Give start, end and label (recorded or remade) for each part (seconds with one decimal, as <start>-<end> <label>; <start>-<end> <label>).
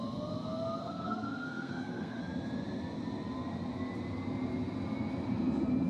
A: 0.0-0.8 recorded; 0.8-2.2 remade; 2.2-5.9 recorded